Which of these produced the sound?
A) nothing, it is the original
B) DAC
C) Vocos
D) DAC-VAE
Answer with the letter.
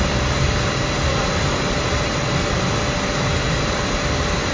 A